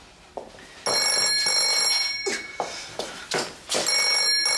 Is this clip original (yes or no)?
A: yes